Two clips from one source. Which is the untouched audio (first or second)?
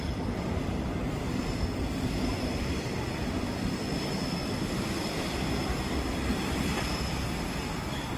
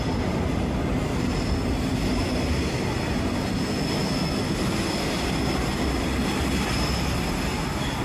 second